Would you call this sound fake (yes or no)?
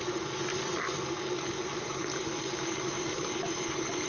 no